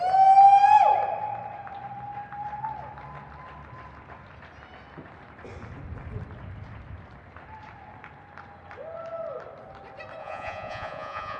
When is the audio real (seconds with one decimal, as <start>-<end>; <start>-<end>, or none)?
0.0-10.2